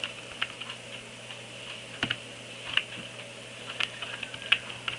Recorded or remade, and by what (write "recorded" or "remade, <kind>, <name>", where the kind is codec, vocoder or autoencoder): recorded